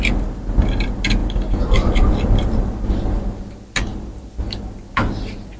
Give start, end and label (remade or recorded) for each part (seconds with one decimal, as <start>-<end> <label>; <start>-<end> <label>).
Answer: 0.0-1.2 recorded; 1.2-2.6 remade; 2.6-3.9 recorded; 3.9-4.5 remade; 4.5-5.6 recorded